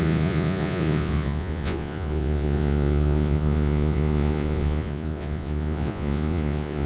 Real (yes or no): no